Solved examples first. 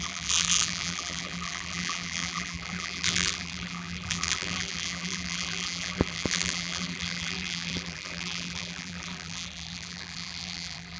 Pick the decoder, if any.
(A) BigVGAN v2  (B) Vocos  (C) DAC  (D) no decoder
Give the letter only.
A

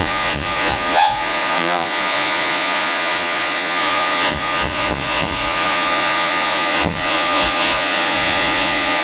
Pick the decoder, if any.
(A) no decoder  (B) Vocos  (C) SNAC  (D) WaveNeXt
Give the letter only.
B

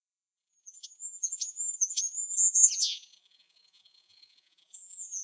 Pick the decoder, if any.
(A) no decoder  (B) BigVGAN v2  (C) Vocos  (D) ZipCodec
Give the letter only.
C